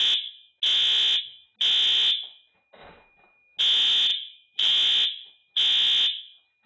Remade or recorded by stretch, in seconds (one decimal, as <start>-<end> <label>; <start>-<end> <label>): 0.0-4.1 recorded; 4.1-4.7 remade; 4.7-6.7 recorded

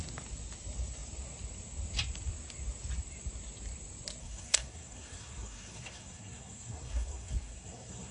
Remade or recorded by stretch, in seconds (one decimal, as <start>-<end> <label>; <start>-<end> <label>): 0.0-4.2 recorded; 4.2-8.1 remade

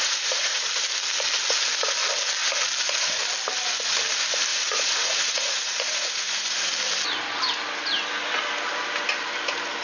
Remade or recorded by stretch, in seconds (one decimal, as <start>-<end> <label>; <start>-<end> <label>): 0.0-0.7 remade; 0.7-4.5 recorded; 4.5-6.7 remade; 6.7-9.8 recorded